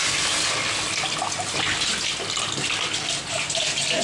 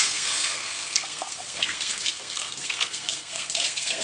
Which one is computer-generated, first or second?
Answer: second